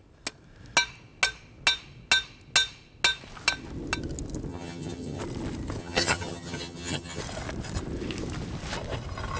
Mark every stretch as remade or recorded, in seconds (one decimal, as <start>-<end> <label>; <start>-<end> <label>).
0.0-4.5 recorded; 4.5-5.2 remade; 5.2-5.8 recorded; 5.8-7.2 remade; 7.2-9.4 recorded